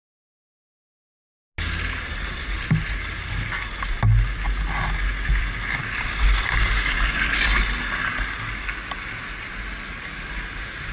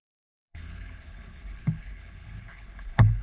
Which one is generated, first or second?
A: second